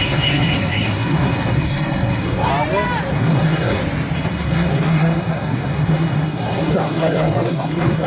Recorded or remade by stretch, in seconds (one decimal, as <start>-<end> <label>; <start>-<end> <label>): 0.0-2.5 remade; 2.5-3.1 recorded; 3.1-3.8 remade; 3.8-4.3 recorded; 4.3-8.1 remade